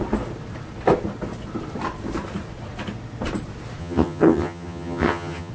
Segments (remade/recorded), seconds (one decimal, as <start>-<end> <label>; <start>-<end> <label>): 0.0-3.8 recorded; 3.8-5.5 remade